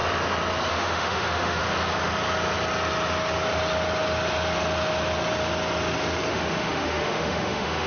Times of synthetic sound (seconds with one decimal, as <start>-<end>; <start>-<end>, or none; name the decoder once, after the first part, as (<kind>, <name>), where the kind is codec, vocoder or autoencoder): 0.7-1.6 (autoencoder, DAC-VAE); 6.3-7.9